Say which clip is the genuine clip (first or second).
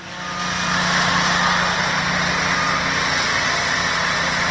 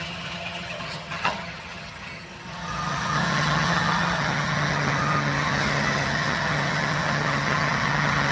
first